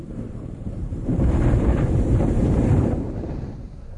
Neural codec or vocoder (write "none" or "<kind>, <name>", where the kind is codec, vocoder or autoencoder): vocoder, BigVGAN v2